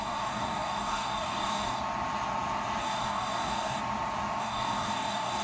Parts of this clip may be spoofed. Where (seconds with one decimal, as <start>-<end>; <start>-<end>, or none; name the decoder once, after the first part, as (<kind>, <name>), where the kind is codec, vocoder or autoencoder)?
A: 0.0-1.8 (codec, DAC); 2.8-3.8; 4.4-5.4